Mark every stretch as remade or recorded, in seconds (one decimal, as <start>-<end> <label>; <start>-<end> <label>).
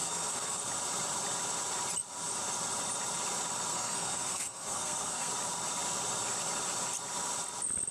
0.0-0.6 remade; 0.6-3.7 recorded; 3.7-5.3 remade; 5.3-7.9 recorded